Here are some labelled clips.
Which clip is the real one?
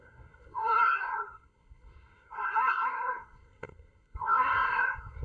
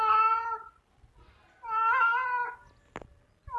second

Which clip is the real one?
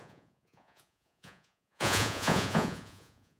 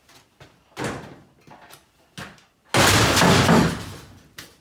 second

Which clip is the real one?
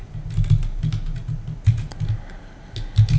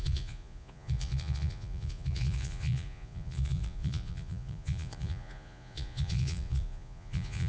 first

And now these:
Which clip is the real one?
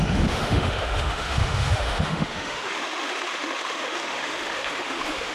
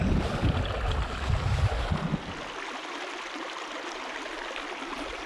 second